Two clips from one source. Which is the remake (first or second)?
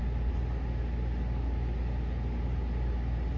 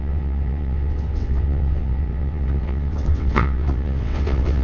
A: second